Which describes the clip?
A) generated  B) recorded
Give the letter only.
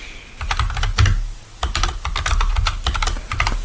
B